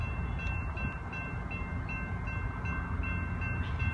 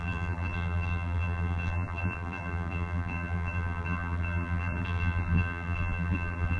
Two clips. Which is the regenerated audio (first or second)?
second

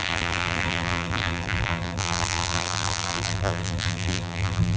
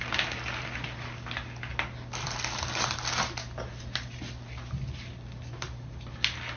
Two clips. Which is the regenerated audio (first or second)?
first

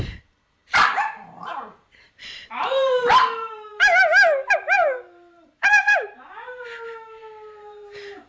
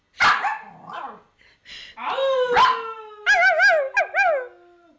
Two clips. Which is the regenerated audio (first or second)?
first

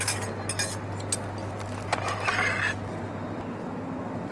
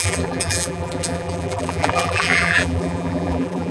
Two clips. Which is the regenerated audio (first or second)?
second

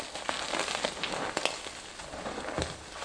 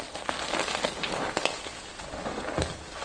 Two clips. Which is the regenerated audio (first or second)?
second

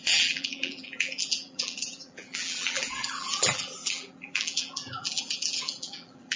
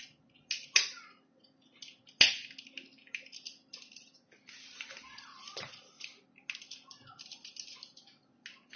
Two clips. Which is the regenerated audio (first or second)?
first